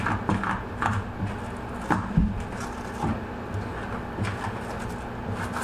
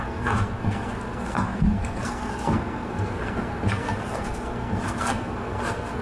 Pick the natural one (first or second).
first